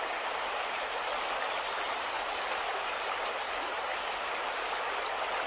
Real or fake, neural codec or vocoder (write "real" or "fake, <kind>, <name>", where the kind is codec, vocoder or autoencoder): real